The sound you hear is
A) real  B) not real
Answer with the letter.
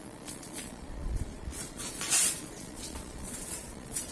B